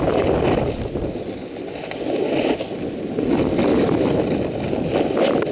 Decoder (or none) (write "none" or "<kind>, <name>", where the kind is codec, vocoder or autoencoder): none